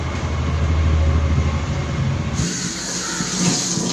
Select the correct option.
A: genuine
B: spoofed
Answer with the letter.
A